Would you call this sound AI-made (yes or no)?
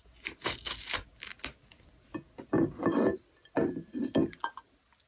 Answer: no